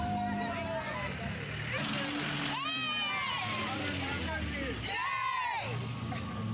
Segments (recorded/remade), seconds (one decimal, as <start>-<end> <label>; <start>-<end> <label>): 0.0-6.5 recorded

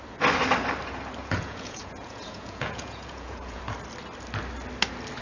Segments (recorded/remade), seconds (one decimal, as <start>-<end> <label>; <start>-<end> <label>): 0.0-1.2 recorded; 1.2-3.6 remade; 3.6-5.2 recorded

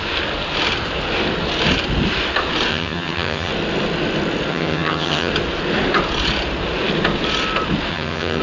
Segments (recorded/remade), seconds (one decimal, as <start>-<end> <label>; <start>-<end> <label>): 0.0-2.7 recorded; 2.7-3.5 remade; 3.5-4.5 recorded; 4.5-5.3 remade; 5.3-7.9 recorded; 7.9-8.4 remade

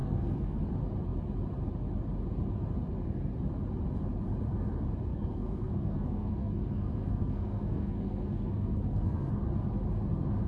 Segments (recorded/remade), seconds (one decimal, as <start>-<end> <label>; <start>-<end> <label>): 0.0-0.6 remade; 0.6-5.1 recorded; 5.1-9.3 remade; 9.3-10.5 recorded

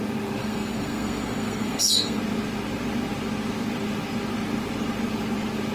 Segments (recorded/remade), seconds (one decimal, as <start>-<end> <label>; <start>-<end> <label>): 0.0-0.4 recorded; 0.4-2.2 remade; 2.2-5.7 recorded

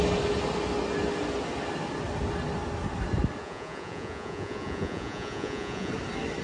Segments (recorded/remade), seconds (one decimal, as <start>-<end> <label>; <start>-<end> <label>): 0.0-3.4 recorded; 3.4-5.9 remade; 5.9-6.4 recorded